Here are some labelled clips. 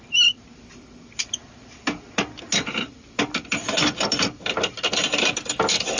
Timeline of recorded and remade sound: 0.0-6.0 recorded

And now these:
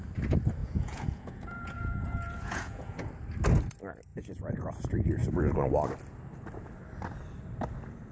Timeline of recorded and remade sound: 0.0-0.6 recorded; 0.6-3.1 remade; 3.1-4.1 recorded; 4.1-4.7 remade; 4.7-8.1 recorded

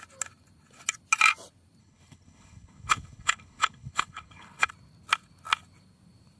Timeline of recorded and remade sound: 0.0-1.8 recorded; 1.8-4.7 remade; 4.7-6.4 recorded

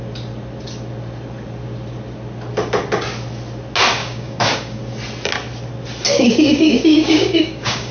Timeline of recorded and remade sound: 0.0-4.0 recorded; 4.0-4.8 remade; 4.8-6.1 recorded; 6.1-7.9 remade

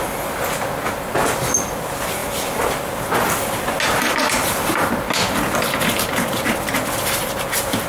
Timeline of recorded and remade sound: 0.0-7.9 recorded

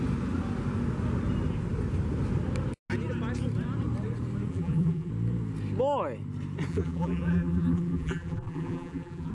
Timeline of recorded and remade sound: 0.0-4.5 recorded; 4.5-5.1 remade; 5.1-6.7 recorded; 6.7-9.3 remade

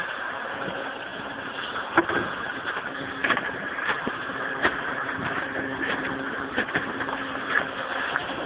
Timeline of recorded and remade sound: 0.0-3.2 recorded; 3.2-7.5 remade; 7.5-8.5 recorded